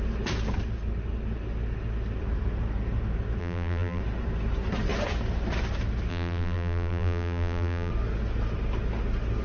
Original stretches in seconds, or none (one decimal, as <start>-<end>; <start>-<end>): 0.0-3.4; 4.0-6.1; 7.9-9.4